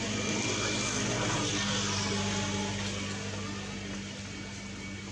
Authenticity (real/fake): real